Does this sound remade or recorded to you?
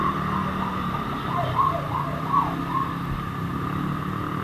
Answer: recorded